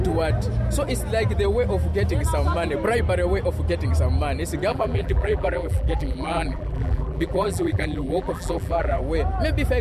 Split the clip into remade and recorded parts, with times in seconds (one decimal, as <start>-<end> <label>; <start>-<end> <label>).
0.0-4.7 recorded; 4.7-9.0 remade; 9.0-9.8 recorded